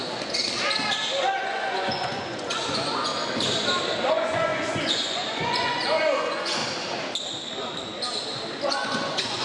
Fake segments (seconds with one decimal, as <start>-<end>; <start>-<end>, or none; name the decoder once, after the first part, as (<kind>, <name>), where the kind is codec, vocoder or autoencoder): 0.0-0.4 (vocoder, Vocos); 1.2-3.1; 4.1-6.6; 8.7-9.4